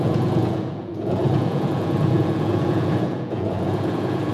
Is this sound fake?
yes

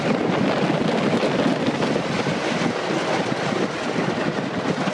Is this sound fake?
no